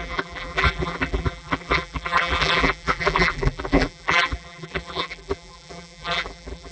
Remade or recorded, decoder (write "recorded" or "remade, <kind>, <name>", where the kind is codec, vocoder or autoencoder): remade, vocoder, BigVGAN v2